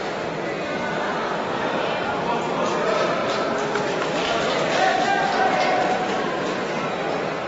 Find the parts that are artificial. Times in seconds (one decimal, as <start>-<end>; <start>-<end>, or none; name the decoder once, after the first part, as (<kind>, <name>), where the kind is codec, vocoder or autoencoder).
none